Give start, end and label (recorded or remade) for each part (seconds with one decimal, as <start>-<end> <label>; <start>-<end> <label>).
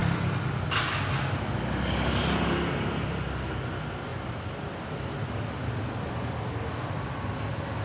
0.0-7.8 recorded